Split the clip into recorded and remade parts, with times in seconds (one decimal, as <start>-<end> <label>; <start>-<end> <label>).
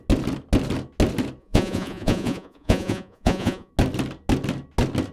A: 0.0-1.4 recorded; 1.4-3.7 remade; 3.7-5.1 recorded